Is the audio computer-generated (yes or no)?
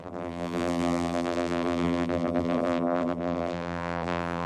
yes